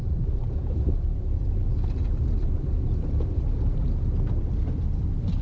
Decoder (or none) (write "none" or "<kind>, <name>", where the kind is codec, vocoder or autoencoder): vocoder, BigVGAN v2